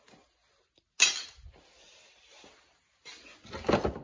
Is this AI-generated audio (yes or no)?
no